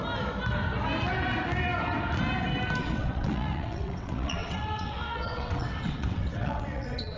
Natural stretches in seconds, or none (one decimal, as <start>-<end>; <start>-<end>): 0.0-2.8